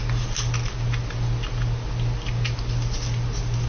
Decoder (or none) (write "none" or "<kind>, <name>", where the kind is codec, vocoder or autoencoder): none